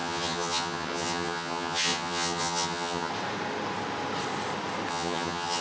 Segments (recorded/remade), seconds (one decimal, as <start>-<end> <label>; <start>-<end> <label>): 0.0-3.1 remade; 3.1-4.9 recorded; 4.9-5.6 remade